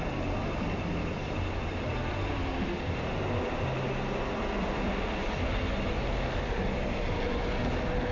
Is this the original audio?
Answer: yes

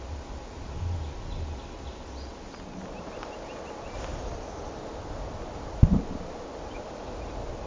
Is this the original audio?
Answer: yes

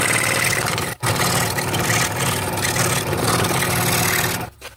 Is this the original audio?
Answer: yes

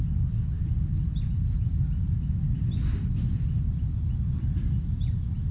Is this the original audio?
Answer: yes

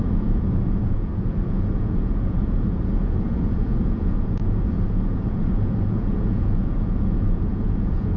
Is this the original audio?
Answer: no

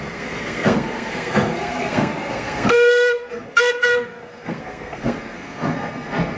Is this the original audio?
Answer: no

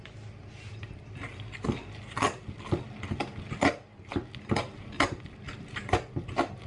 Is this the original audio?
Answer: yes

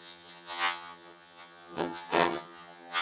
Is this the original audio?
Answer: no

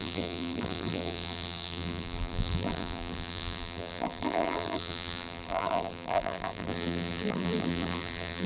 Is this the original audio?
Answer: no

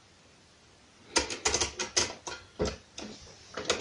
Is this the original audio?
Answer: yes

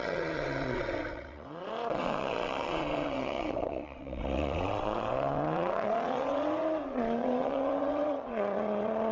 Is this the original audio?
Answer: no